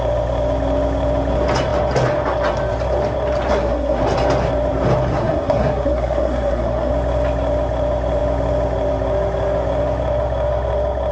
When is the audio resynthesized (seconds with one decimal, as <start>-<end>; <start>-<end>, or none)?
3.5-4.0; 5.1-6.9